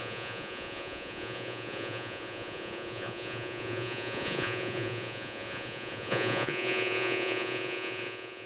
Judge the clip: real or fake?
fake